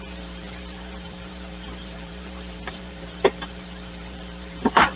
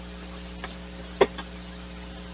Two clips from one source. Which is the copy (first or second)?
first